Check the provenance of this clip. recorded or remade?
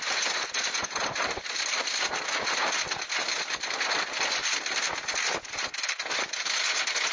recorded